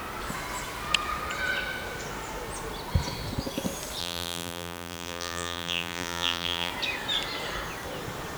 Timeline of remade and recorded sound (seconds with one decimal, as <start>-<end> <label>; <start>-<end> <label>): 0.0-4.0 recorded; 4.0-6.7 remade; 6.7-8.4 recorded